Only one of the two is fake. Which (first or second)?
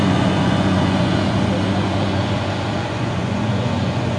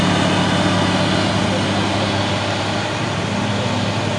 first